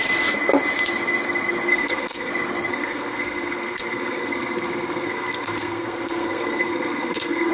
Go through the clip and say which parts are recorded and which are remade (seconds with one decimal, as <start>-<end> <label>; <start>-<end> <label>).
0.0-1.7 recorded; 1.7-2.3 remade; 2.3-2.7 recorded; 2.7-7.5 remade